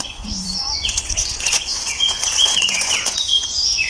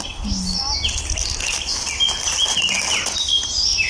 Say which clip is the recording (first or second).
second